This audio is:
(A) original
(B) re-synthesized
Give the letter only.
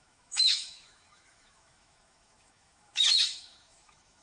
B